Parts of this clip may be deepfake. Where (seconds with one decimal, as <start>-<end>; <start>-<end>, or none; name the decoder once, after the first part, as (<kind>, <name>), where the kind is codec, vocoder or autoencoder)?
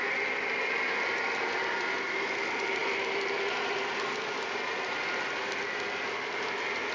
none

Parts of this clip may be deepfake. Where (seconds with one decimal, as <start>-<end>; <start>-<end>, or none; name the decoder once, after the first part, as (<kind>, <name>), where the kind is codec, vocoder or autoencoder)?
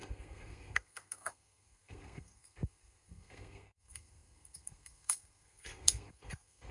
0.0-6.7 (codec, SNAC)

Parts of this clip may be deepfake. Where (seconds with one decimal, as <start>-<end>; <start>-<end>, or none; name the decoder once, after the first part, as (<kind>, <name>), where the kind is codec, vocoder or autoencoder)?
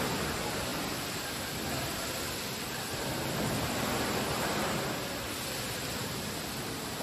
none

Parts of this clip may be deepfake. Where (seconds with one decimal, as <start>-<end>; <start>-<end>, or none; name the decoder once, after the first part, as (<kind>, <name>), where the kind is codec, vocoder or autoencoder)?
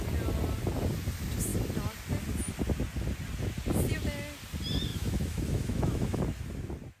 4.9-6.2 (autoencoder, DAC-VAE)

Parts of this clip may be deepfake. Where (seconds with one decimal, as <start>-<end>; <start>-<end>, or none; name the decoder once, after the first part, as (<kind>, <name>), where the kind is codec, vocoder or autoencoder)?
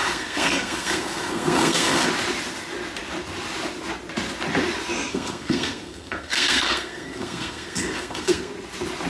0.0-2.1 (codec, SNAC); 5.1-8.5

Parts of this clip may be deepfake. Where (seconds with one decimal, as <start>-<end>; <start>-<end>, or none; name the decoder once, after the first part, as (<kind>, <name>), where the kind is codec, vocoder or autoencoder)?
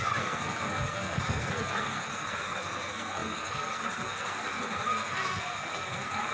0.0-6.3 (codec, SNAC)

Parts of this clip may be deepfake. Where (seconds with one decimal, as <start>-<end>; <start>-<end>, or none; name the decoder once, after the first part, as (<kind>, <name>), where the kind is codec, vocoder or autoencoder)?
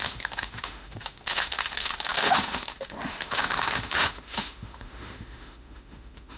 0.0-6.4 (autoencoder, DAC-VAE)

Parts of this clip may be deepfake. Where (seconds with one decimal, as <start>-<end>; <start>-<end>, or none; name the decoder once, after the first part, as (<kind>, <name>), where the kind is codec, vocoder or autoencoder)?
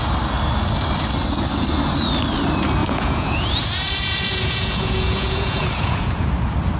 2.8-6.3 (vocoder, Vocos)